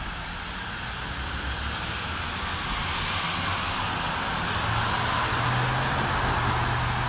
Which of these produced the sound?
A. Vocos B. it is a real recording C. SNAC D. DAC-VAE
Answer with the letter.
B